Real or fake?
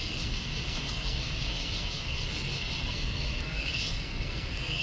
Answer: fake